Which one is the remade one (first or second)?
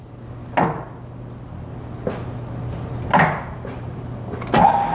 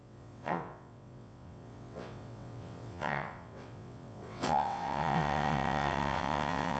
second